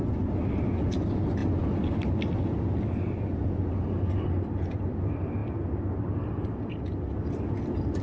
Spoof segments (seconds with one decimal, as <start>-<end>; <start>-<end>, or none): none